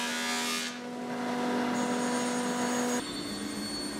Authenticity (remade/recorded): recorded